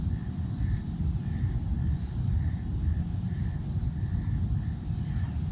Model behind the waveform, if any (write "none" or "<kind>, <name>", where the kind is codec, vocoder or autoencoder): none